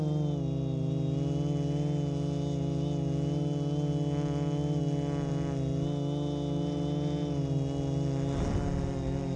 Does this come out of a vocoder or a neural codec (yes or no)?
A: no